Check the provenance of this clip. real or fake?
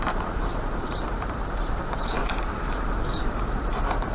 fake